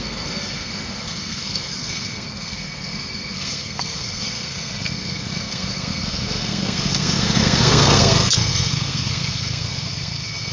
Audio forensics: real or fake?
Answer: fake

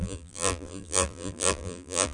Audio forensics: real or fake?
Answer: fake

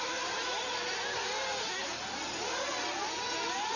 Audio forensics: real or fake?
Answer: real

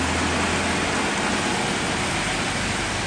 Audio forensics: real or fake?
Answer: real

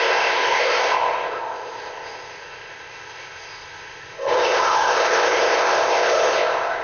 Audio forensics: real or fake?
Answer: fake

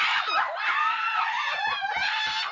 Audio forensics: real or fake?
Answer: real